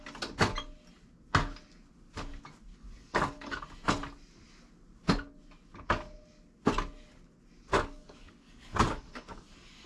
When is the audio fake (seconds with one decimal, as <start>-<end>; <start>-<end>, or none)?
2.7-3.6; 7.7-9.9

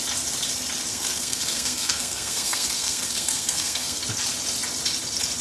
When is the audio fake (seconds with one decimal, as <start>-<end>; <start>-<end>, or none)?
0.9-4.0

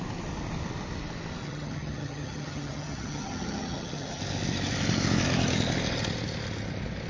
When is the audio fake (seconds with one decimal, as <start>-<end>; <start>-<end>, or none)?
1.4-4.2

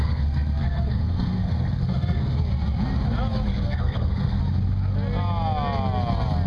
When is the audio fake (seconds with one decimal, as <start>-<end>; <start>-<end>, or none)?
0.0-2.4; 3.5-4.4

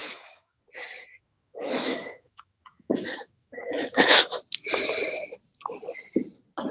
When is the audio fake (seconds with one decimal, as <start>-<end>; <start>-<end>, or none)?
0.0-0.6; 1.1-4.3

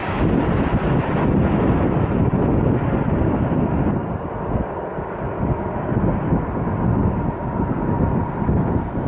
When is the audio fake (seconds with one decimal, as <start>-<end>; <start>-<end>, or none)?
none